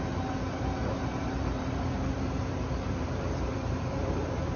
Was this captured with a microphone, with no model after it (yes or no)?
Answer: no